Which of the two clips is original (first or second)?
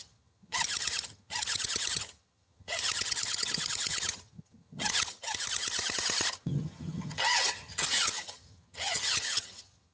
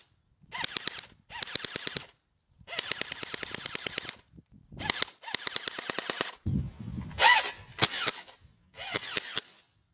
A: second